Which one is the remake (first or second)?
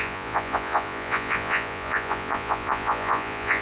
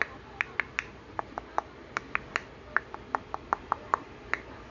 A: first